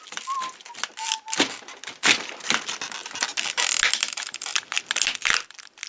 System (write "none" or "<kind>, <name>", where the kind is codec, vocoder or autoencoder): none